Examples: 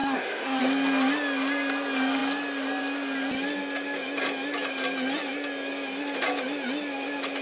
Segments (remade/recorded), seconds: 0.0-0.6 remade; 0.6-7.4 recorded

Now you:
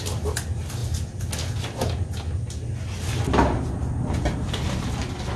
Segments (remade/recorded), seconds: 0.0-5.4 recorded

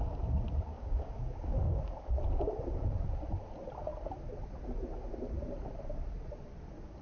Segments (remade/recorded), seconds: 0.0-0.7 recorded; 0.7-1.8 remade; 1.8-7.0 recorded